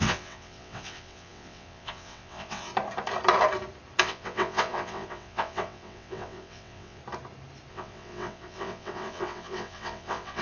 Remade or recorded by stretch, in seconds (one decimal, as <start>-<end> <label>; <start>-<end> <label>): 0.0-2.7 remade; 2.7-4.0 recorded; 4.0-7.0 remade; 7.0-7.7 recorded; 7.7-10.4 remade